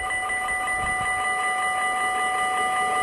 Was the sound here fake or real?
real